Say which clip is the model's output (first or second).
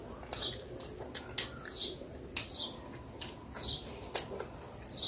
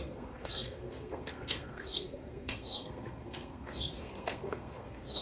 second